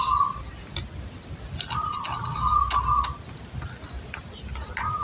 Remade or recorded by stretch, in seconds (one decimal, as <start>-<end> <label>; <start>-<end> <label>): 0.0-5.0 recorded